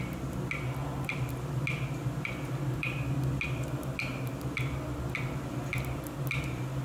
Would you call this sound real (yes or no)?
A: yes